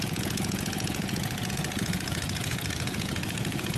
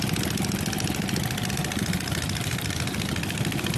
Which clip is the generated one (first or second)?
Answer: first